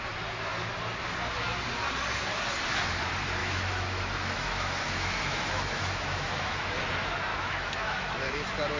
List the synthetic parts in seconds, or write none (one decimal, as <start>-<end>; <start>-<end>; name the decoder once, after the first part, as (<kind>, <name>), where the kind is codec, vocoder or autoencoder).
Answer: 3.4-6.8 (autoencoder, DAC-VAE); 7.3-8.3

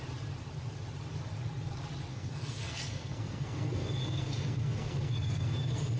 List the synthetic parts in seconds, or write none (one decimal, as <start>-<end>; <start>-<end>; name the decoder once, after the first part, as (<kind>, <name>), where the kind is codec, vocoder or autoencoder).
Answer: 2.1-6.0 (codec, SNAC)

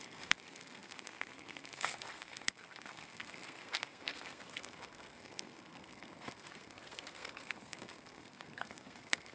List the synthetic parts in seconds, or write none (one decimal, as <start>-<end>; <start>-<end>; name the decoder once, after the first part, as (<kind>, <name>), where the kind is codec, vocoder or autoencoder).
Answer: 0.0-9.3 (codec, SNAC)